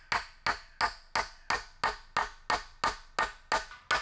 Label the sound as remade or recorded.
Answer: recorded